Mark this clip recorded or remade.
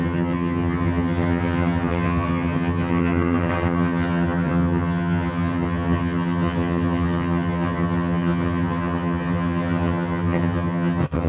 remade